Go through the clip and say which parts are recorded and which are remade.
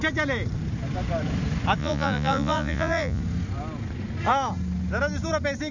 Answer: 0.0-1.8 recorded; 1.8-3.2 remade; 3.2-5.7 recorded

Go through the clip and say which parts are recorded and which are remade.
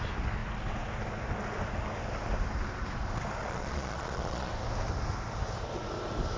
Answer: 0.0-3.4 recorded; 3.4-4.5 remade; 4.5-6.4 recorded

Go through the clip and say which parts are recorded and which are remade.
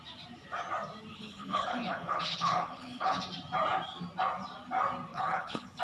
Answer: 0.0-1.1 recorded; 1.1-3.2 remade; 3.2-5.1 recorded; 5.1-5.8 remade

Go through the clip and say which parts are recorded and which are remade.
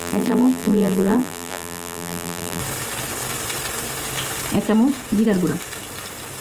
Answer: 0.0-2.6 remade; 2.6-6.4 recorded